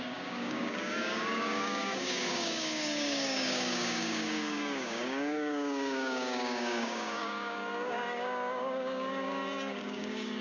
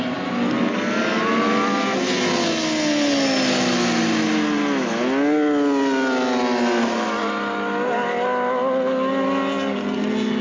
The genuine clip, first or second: second